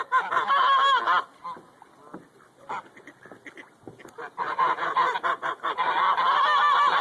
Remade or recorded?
recorded